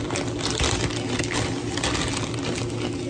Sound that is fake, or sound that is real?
real